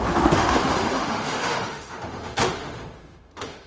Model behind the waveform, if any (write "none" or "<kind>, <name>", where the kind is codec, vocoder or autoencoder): autoencoder, DAC-VAE